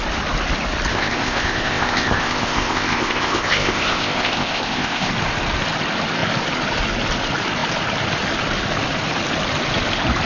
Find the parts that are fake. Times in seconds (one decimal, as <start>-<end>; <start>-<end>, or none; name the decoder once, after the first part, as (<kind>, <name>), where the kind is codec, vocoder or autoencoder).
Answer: 0.9-5.1 (codec, ZipCodec)